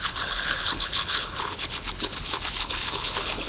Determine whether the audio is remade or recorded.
remade